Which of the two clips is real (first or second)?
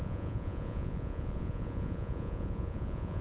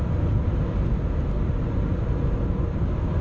second